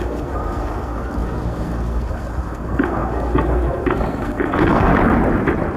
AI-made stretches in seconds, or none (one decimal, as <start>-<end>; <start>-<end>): 0.0-4.9